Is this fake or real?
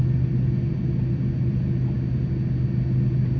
real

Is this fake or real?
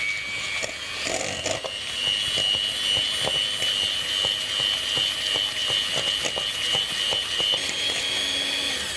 real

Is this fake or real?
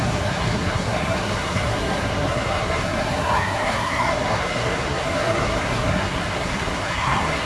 fake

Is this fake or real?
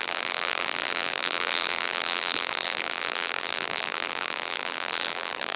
fake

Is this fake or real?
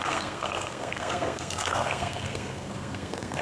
fake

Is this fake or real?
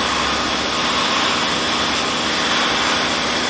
real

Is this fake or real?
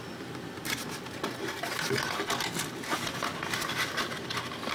real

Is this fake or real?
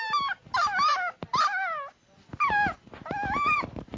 real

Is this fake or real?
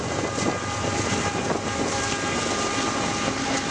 real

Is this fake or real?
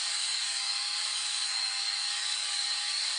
fake